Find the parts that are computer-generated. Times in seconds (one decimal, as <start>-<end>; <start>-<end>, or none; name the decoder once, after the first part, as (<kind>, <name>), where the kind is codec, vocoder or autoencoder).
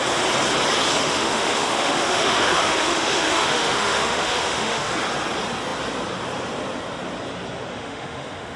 1.0-4.9 (autoencoder, DAC-VAE); 7.7-8.6